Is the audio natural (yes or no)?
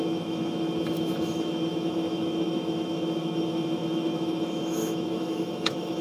no